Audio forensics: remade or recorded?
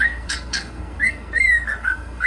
remade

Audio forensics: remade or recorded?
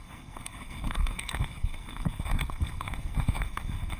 remade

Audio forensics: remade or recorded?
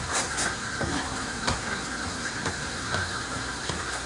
remade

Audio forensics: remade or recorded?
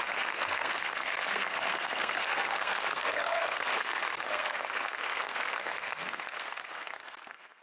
remade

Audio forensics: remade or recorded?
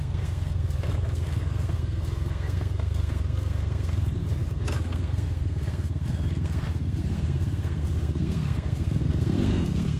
remade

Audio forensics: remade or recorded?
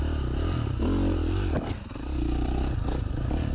recorded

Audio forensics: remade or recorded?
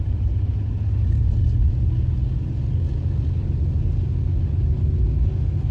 recorded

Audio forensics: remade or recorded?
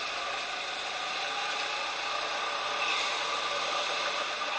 recorded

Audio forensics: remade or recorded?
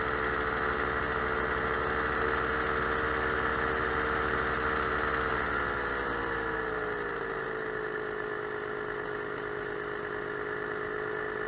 recorded